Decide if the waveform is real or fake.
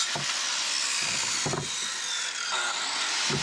real